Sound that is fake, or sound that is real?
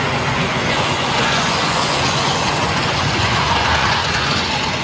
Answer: fake